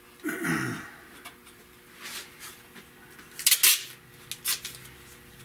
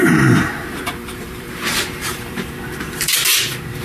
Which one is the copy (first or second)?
second